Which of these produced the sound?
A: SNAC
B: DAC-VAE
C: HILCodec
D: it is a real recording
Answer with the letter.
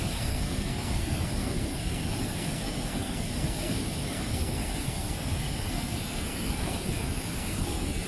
A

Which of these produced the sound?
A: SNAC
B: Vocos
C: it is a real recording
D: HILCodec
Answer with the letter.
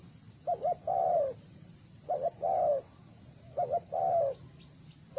C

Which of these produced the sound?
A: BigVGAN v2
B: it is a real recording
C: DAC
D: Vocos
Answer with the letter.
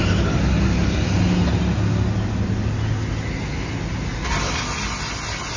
B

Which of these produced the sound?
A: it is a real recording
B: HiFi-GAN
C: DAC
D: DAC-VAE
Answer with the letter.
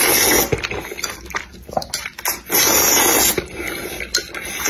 A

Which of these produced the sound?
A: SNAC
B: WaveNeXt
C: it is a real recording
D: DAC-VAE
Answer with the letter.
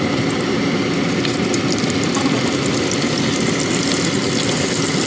C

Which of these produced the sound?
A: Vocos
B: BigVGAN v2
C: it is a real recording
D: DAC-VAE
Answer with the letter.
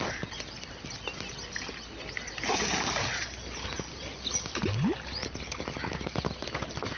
C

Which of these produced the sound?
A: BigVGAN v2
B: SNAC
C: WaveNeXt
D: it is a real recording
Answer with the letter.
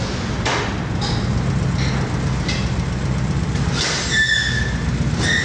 D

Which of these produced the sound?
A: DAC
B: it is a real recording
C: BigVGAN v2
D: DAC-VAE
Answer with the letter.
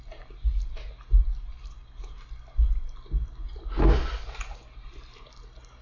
B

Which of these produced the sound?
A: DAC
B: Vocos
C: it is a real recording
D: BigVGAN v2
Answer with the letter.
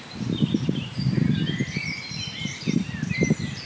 C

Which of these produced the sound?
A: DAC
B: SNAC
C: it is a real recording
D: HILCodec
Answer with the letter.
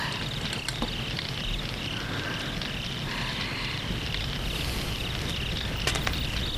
C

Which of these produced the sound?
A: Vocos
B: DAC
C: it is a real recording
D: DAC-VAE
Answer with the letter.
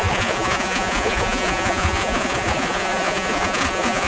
A